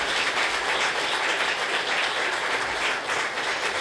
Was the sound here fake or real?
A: real